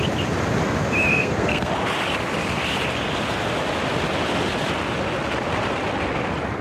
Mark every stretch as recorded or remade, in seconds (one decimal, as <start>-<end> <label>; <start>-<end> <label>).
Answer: 0.0-1.1 recorded; 1.1-1.7 remade; 1.7-6.6 recorded